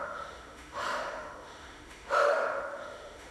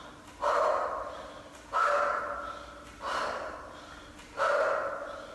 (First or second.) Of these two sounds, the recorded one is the second